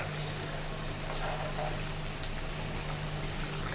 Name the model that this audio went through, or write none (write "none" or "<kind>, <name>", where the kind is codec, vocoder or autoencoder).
none